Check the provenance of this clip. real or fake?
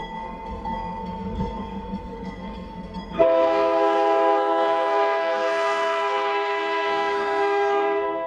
fake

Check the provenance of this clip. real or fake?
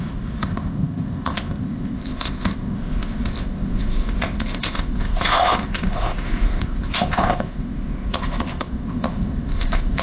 fake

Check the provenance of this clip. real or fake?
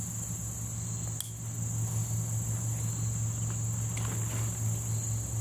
real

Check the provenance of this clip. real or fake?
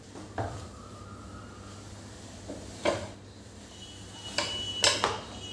real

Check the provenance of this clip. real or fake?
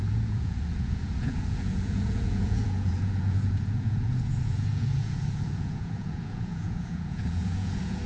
fake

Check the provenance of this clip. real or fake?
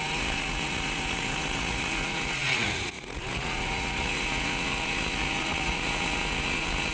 fake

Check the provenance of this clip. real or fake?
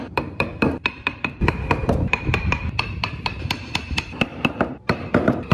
fake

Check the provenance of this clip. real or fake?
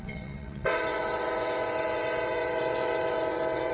fake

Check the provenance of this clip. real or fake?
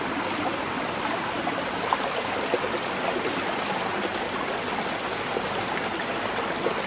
real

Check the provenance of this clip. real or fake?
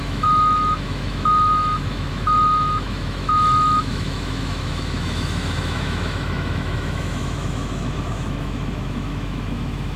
fake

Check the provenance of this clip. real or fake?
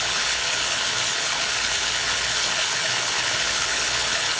fake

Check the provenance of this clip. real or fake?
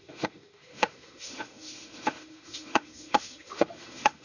fake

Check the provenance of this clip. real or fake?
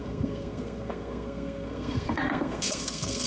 fake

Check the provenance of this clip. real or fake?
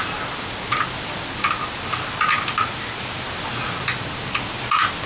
real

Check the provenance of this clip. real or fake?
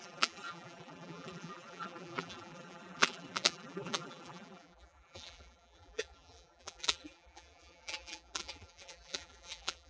fake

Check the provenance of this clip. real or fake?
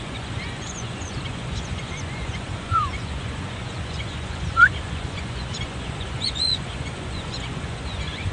fake